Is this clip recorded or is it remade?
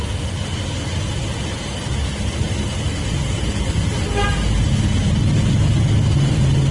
recorded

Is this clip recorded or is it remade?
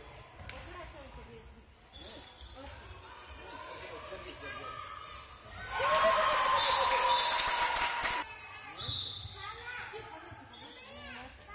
recorded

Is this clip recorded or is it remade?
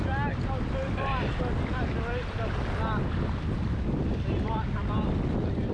recorded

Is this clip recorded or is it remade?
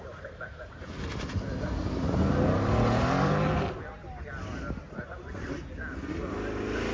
recorded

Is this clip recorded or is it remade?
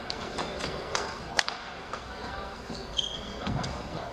remade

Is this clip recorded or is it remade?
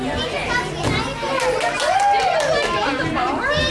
recorded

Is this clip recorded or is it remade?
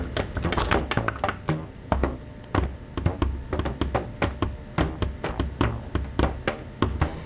recorded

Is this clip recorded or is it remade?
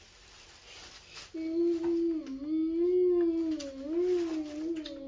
recorded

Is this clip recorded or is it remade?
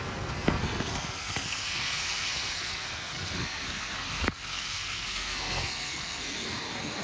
remade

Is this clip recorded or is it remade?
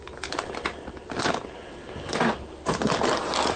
recorded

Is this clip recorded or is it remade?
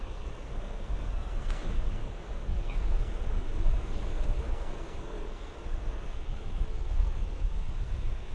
remade